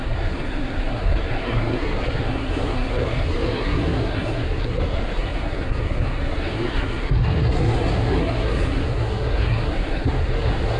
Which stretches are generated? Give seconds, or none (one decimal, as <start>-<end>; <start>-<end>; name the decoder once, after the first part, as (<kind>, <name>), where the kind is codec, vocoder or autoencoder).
0.0-10.8 (codec, SNAC)